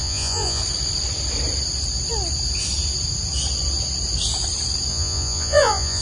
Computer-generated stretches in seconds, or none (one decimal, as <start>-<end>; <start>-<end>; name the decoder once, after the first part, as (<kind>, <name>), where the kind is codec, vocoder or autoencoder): 0.0-0.6 (vocoder, Vocos); 4.9-6.0

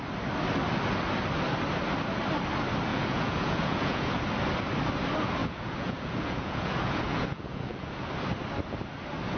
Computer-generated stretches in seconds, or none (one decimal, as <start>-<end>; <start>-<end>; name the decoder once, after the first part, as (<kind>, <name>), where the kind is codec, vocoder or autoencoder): 2.9-4.2 (vocoder, Vocos); 5.4-8.1

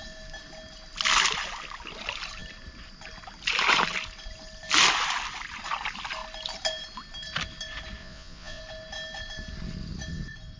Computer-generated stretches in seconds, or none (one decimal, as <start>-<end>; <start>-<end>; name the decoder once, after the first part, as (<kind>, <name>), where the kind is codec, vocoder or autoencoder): 8.0-8.6 (vocoder, Vocos)

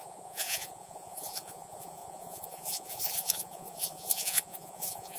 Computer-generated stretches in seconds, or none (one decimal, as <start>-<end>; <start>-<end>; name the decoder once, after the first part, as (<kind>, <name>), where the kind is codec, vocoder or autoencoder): 0.0-5.2 (vocoder, Vocos)

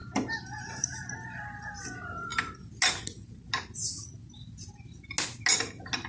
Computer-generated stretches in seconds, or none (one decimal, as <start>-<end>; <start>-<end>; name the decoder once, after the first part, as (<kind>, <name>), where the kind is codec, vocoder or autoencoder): none

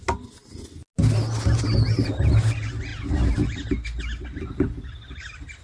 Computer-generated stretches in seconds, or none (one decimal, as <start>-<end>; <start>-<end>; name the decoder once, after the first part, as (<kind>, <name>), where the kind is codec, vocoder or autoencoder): none

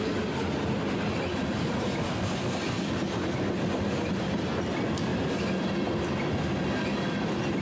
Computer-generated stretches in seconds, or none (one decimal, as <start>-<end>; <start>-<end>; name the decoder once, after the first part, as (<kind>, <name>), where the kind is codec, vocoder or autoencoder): none